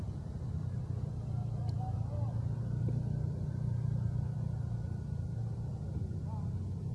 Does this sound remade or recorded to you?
recorded